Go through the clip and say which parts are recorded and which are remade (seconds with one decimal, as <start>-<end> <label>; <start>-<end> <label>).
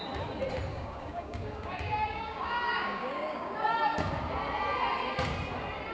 0.0-0.7 recorded; 0.7-3.7 remade; 3.7-5.9 recorded